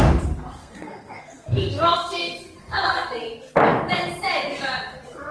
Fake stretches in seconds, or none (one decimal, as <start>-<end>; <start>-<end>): 0.6-3.1